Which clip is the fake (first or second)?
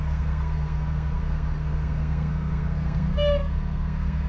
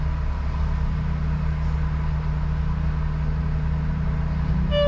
first